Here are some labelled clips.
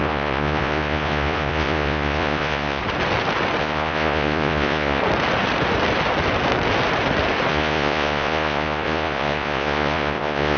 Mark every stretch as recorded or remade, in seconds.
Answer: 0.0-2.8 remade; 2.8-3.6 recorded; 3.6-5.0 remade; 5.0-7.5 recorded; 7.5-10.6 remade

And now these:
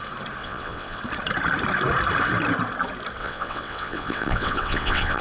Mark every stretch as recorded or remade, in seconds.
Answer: 0.0-0.4 recorded; 0.4-1.0 remade; 1.0-3.2 recorded; 3.2-5.2 remade

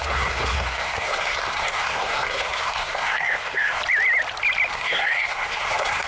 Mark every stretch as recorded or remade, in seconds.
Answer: 0.0-3.8 remade; 3.8-4.7 recorded; 4.7-6.1 remade

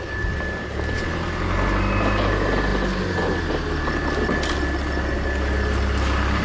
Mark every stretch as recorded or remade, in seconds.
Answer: 0.0-6.4 recorded

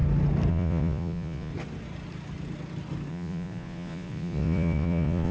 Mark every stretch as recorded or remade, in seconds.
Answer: 0.0-0.5 recorded; 0.5-1.5 remade; 1.5-3.1 recorded; 3.1-5.3 remade

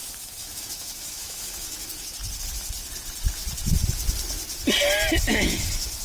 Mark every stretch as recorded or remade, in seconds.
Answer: 0.0-1.9 remade; 1.9-5.2 recorded; 5.2-6.0 remade